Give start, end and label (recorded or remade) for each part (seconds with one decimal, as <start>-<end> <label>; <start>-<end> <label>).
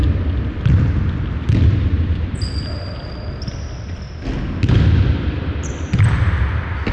0.0-6.9 recorded